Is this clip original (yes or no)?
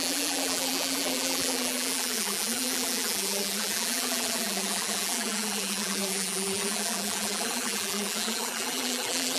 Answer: no